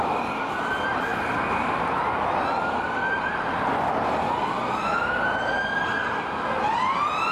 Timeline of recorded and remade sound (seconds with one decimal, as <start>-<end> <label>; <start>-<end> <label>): 0.0-7.3 recorded